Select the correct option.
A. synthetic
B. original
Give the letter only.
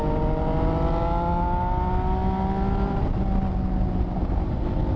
B